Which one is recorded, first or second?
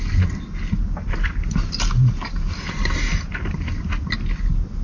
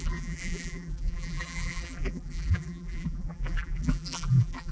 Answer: first